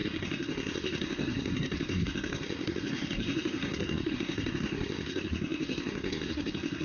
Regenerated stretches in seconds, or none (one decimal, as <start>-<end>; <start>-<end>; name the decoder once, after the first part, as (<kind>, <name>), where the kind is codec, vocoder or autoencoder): 0.0-6.8 (codec, SNAC)